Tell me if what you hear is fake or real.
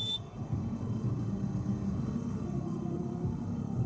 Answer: fake